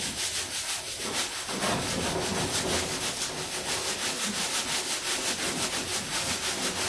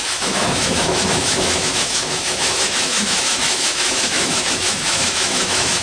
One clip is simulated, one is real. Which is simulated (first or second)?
second